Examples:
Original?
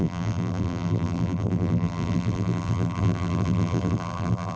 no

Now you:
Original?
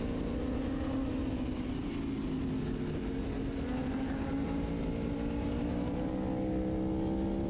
yes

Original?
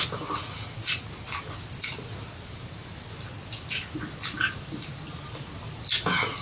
yes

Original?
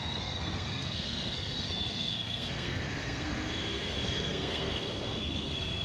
no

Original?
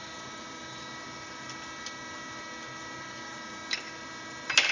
yes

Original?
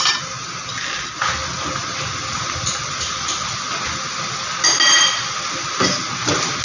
yes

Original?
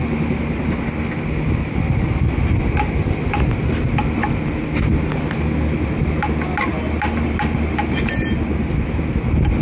yes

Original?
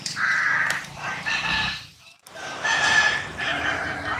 no